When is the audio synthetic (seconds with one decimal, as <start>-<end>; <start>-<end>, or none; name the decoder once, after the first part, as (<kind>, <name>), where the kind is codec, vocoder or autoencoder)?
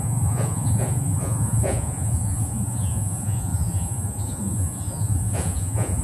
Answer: 0.0-6.0 (vocoder, Vocos)